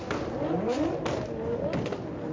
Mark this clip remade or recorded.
recorded